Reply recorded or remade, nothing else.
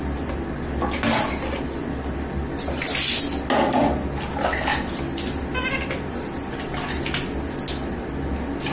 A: recorded